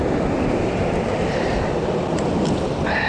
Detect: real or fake fake